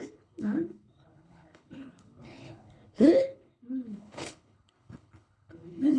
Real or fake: fake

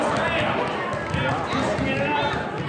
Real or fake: real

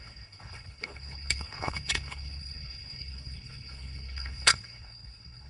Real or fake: fake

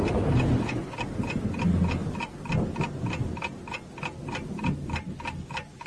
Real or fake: real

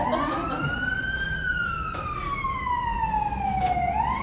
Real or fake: real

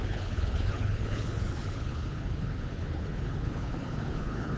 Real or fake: fake